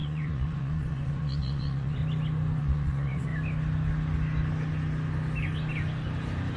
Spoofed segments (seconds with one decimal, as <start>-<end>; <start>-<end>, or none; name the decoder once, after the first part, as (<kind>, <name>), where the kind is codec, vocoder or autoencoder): 0.0-2.0 (vocoder, Vocos); 2.6-3.3